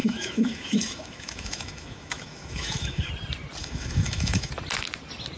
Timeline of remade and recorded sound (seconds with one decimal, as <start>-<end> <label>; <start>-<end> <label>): 0.0-3.1 remade; 3.1-3.6 recorded; 3.6-4.5 remade; 4.5-5.4 recorded